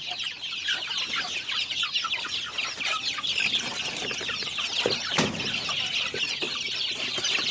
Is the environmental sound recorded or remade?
recorded